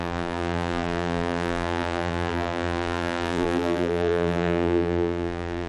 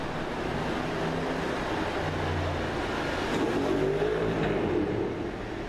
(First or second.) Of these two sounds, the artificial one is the first